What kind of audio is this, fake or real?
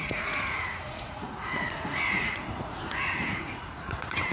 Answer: fake